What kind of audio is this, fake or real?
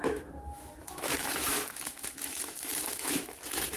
fake